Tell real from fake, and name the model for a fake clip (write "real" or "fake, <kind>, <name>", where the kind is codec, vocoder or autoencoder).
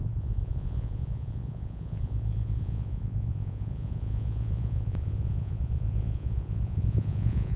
fake, vocoder, Vocos